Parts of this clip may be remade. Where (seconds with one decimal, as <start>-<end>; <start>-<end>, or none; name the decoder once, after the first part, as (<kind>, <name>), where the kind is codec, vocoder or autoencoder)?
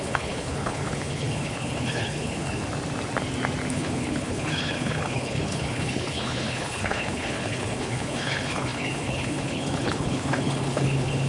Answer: 0.0-2.6 (codec, HILCodec); 3.7-11.3